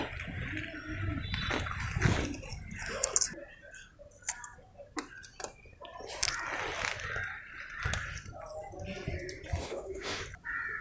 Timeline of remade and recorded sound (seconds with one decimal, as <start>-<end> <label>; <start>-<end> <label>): 0.0-9.6 recorded; 9.6-10.2 remade; 10.2-10.8 recorded